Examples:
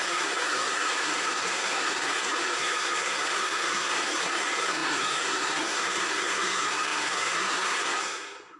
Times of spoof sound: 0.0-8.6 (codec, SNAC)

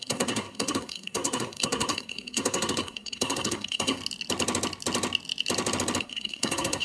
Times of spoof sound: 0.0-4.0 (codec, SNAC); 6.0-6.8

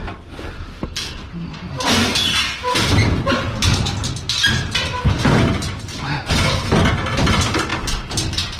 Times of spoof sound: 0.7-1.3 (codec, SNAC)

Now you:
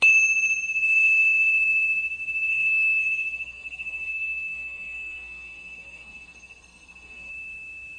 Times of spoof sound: 2.5-7.3 (codec, SNAC)

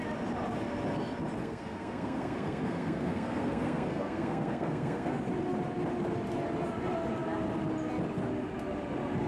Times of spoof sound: 1.4-5.2 (codec, SNAC)

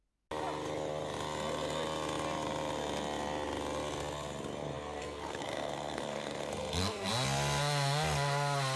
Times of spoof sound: 5.0-7.1 (codec, SNAC)